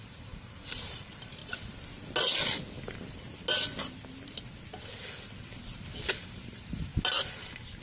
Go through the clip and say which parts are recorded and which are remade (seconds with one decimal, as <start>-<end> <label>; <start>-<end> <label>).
0.0-1.4 remade; 1.4-6.1 recorded; 6.1-6.9 remade; 6.9-7.8 recorded